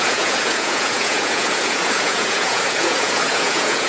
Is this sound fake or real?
fake